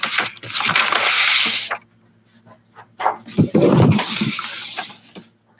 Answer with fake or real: real